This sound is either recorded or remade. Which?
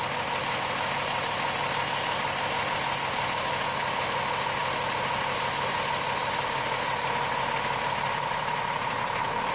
recorded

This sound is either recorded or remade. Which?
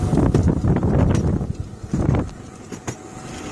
recorded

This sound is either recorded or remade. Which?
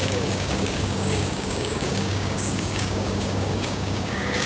remade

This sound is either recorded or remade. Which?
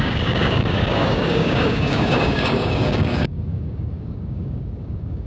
remade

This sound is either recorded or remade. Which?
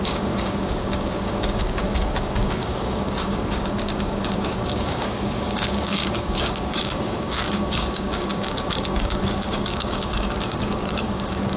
remade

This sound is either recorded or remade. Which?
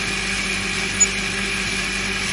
recorded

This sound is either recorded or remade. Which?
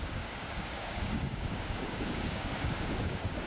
remade